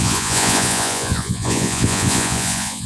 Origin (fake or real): fake